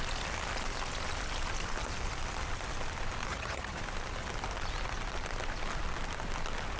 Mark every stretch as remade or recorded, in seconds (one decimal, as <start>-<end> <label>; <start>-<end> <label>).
0.0-3.3 recorded; 3.3-3.8 remade; 3.8-6.8 recorded